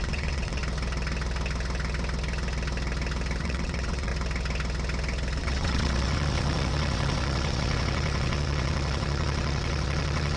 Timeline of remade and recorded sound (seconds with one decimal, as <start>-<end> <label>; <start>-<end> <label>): 0.0-0.6 remade; 0.6-3.4 recorded; 3.4-4.1 remade; 4.1-5.4 recorded; 5.4-10.4 remade